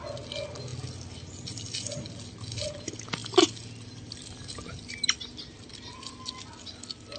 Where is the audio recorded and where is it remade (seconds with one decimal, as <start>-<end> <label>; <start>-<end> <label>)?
0.0-7.2 recorded

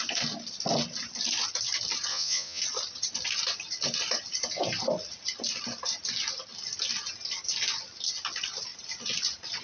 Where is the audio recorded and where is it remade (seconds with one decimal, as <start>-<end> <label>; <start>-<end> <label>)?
0.0-2.1 recorded; 2.1-2.6 remade; 2.6-9.6 recorded